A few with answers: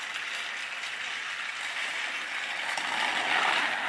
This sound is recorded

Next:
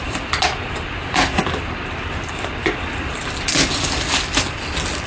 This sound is recorded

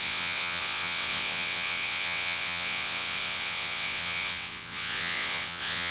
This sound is remade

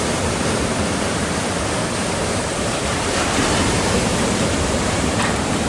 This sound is remade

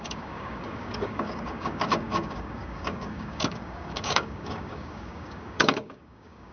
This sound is remade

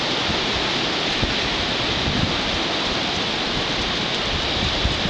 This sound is recorded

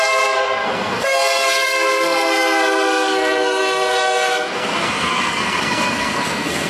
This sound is remade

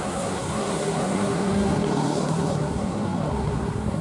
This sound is remade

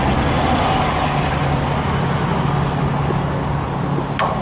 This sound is recorded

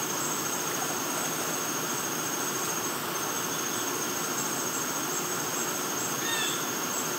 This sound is recorded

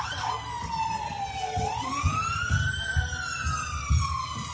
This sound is recorded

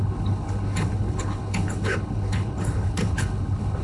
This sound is remade